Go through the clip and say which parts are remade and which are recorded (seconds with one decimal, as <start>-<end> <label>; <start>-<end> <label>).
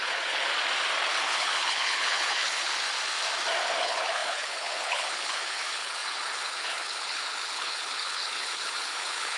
0.0-0.5 remade; 0.5-1.1 recorded; 1.1-2.7 remade; 2.7-3.8 recorded; 3.8-9.4 remade